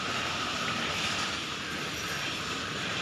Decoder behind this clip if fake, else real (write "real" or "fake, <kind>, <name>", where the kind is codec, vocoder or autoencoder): fake, vocoder, BigVGAN v2